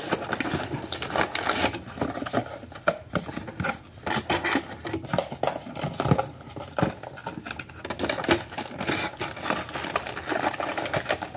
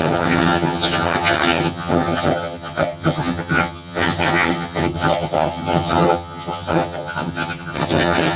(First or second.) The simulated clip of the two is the second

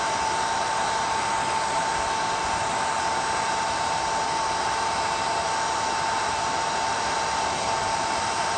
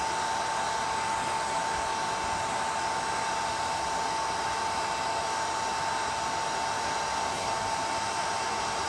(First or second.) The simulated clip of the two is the first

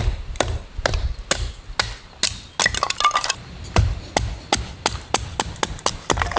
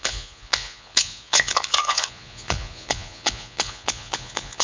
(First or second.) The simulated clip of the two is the second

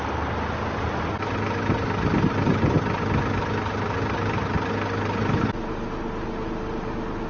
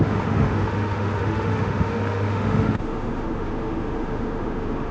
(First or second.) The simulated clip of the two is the second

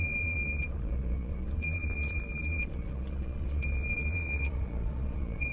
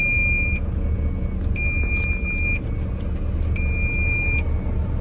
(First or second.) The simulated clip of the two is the first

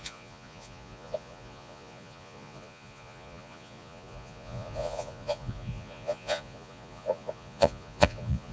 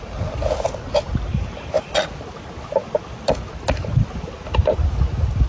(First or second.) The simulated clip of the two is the first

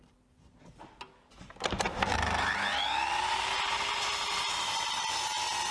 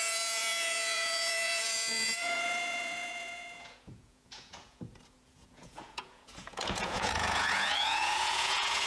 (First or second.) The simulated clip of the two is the second